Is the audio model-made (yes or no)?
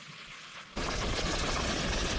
yes